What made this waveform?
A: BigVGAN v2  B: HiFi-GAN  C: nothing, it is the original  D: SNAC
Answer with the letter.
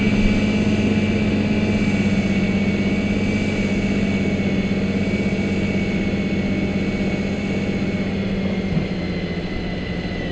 C